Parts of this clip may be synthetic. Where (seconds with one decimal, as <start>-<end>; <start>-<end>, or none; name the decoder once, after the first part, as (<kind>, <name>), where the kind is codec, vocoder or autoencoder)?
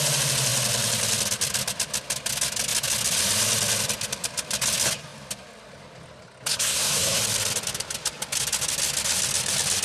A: 6.5-7.2 (codec, SNAC)